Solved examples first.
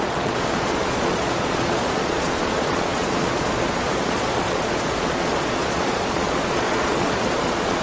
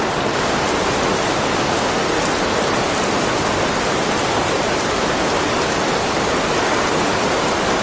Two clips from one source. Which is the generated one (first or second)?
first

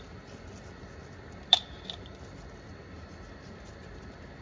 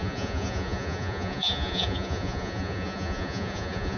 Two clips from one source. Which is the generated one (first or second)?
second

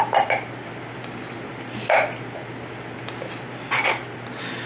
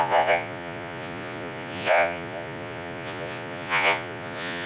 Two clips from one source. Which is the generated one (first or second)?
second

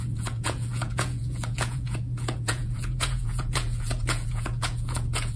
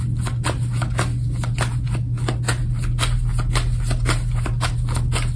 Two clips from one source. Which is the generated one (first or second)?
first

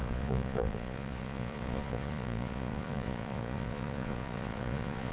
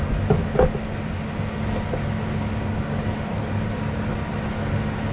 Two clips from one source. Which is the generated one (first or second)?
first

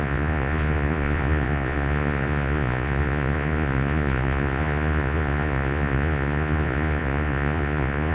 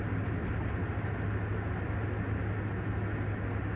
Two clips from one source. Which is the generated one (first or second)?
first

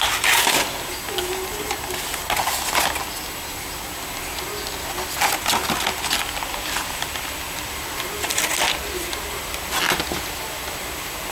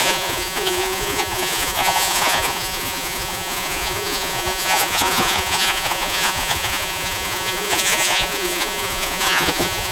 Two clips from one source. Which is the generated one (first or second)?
second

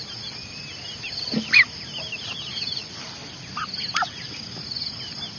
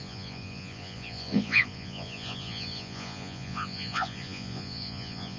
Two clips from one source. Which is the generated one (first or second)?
second